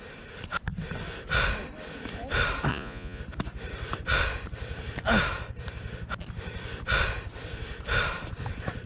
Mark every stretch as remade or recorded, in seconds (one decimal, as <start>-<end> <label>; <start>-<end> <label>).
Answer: 0.0-2.7 recorded; 2.7-3.2 remade; 3.2-8.9 recorded